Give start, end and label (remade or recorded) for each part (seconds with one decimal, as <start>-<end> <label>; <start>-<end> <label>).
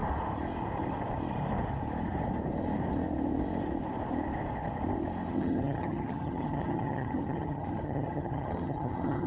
0.0-5.3 recorded; 5.3-9.3 remade